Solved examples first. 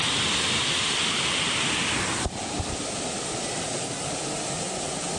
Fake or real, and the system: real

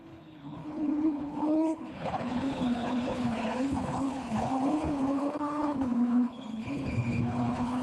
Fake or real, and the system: fake, codec, HILCodec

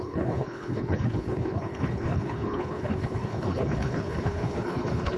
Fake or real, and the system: fake, codec, HILCodec